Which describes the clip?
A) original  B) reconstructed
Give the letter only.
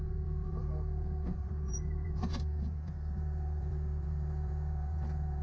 B